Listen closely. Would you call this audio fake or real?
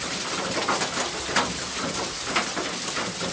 real